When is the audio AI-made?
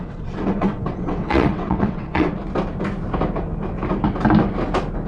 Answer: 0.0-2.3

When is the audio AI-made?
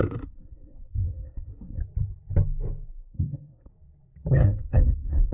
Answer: 0.0-1.8; 2.9-3.7; 4.3-5.3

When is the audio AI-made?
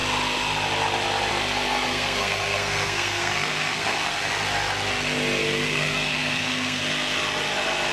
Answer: 1.9-4.3; 5.4-6.8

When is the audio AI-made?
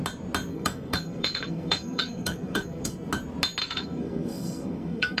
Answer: 0.5-3.1; 3.6-5.2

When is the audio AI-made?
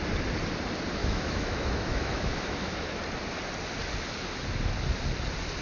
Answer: 1.0-3.0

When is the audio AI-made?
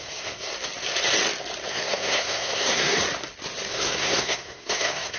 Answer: 0.0-0.5; 1.7-3.0; 3.7-5.2